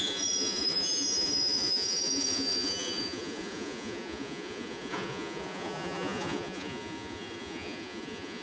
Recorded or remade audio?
remade